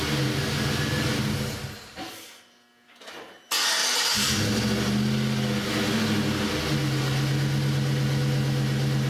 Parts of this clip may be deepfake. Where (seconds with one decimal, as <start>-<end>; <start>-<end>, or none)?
none